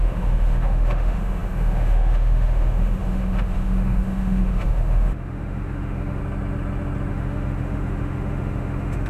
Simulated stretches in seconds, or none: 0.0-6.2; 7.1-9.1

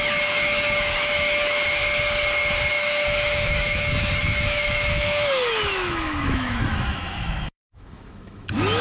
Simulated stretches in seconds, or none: 0.0-1.8; 2.7-8.8

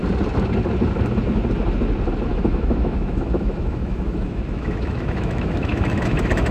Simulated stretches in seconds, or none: 2.3-6.5

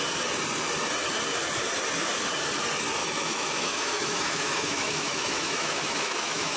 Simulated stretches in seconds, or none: 3.0-6.6

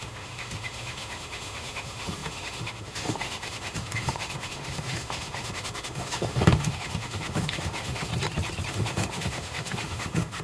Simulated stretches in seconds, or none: 0.0-8.1; 8.7-10.4